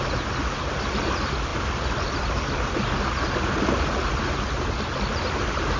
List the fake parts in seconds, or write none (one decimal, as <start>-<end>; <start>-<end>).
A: none